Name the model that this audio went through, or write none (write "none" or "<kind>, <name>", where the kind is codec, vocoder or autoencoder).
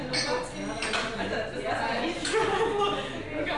none